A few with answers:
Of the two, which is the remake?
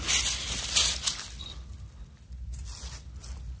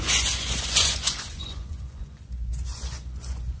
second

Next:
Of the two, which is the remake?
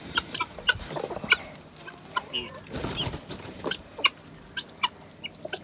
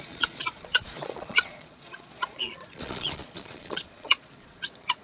second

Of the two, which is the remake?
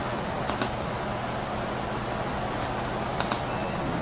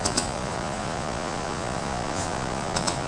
second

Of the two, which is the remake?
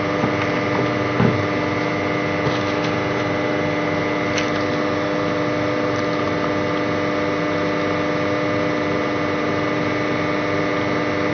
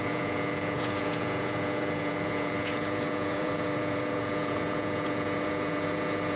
second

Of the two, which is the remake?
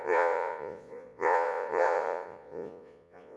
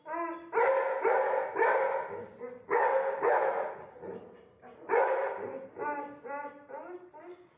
first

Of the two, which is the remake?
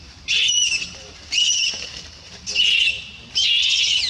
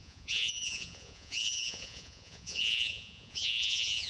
second